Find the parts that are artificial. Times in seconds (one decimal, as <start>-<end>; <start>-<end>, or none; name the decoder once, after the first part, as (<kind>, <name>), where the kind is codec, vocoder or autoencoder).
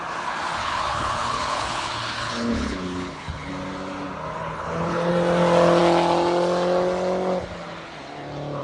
0.6-3.5 (codec, HILCodec); 4.4-5.1